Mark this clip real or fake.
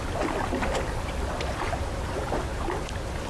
real